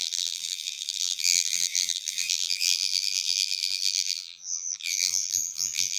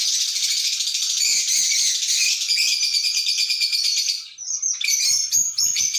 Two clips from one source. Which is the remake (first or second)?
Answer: first